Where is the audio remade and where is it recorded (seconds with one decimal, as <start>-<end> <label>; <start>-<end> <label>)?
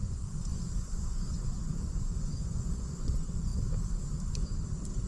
0.0-3.5 remade; 3.5-5.1 recorded